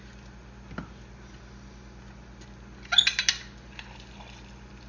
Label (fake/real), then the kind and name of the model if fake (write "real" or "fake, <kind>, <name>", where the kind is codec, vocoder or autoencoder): real